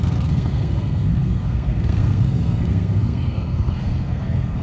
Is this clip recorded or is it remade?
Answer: remade